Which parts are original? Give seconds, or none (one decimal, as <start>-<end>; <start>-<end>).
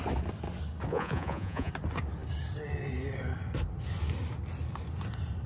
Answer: 0.0-0.9; 1.7-5.5